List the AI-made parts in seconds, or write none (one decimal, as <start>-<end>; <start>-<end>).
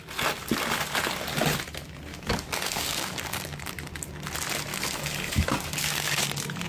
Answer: 2.1-4.1; 4.7-6.2